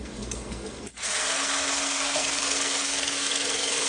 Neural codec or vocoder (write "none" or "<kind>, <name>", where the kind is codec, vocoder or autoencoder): codec, SNAC